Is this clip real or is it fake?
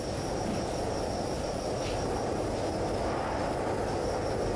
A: real